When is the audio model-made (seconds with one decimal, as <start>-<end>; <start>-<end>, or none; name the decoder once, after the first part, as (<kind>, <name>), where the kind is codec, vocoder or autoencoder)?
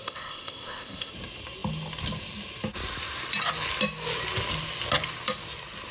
0.0-1.1 (codec, ZipCodec)